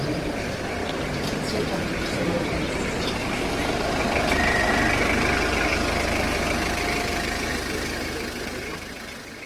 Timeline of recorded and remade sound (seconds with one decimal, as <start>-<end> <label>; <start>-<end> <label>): 0.0-0.8 recorded; 0.8-2.5 remade; 2.5-3.2 recorded; 3.2-4.7 remade; 4.7-7.1 recorded; 7.1-8.9 remade; 8.9-9.5 recorded